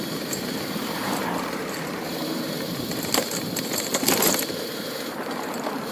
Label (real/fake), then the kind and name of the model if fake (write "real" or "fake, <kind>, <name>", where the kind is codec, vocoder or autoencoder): fake, vocoder, BigVGAN v2